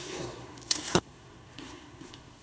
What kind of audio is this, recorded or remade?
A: remade